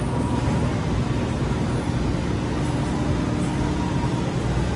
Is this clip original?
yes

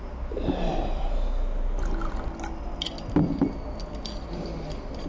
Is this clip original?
yes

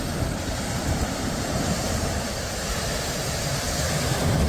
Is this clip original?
no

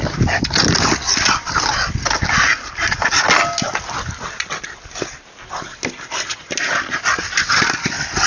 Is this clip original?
yes